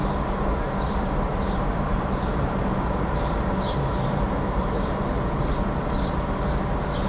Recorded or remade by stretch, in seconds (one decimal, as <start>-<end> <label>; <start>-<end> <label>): 0.0-1.3 recorded; 1.3-5.0 remade; 5.0-7.1 recorded